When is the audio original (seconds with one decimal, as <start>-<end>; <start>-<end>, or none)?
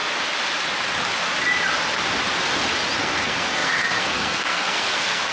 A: 0.0-3.0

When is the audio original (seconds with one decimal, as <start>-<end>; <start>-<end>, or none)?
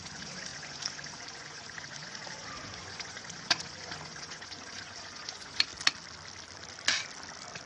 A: 5.7-7.7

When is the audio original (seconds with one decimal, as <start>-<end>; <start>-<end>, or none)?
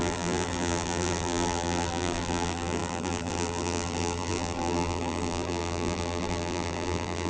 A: none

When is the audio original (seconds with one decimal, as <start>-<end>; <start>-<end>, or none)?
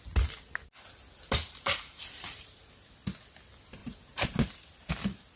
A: 0.0-1.4; 2.7-3.8; 4.9-5.4